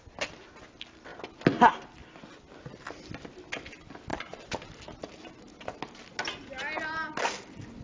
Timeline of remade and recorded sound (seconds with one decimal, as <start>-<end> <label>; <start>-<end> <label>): 0.0-1.1 recorded; 1.1-1.7 remade; 1.7-4.1 recorded; 4.1-4.7 remade; 4.7-7.8 recorded